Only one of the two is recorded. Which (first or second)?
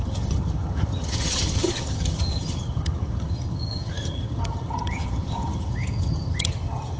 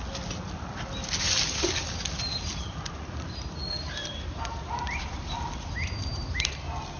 second